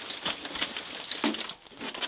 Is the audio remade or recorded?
recorded